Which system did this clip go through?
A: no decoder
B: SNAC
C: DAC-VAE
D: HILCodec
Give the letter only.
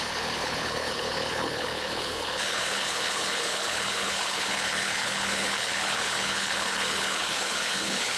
D